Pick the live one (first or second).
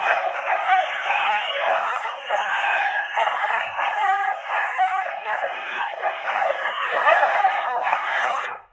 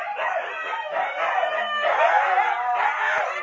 second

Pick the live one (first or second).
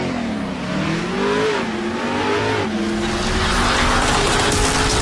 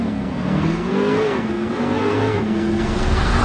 first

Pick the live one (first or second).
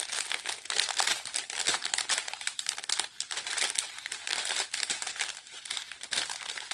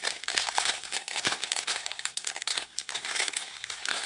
first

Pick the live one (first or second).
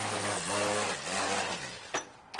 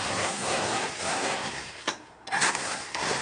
first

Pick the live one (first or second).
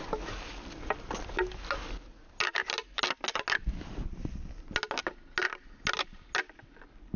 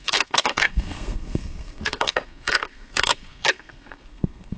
first